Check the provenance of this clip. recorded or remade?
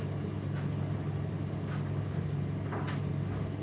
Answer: recorded